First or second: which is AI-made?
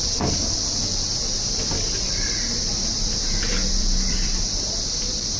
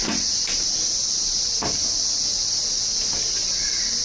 first